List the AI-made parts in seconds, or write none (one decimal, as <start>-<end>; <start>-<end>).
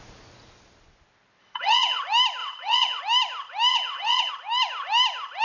1.4-2.0; 2.4-3.0; 3.7-4.3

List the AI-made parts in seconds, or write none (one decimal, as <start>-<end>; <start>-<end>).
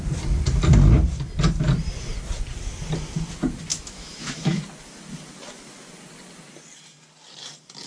3.7-4.6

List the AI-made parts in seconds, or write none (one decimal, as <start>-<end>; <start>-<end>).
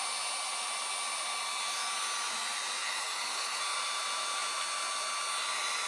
2.8-3.6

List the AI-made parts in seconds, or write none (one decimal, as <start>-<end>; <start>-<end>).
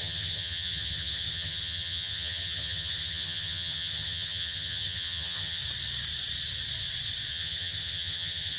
0.0-5.6; 7.3-8.6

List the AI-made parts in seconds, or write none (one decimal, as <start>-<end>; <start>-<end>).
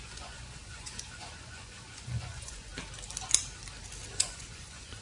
0.0-2.7; 4.1-5.0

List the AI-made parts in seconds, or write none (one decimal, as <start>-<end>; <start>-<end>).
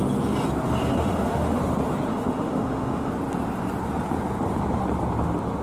1.0-1.6; 2.1-3.1